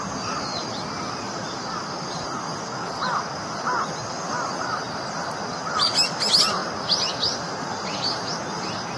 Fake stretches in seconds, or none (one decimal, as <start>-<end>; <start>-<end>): none